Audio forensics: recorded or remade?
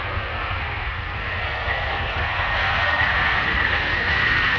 remade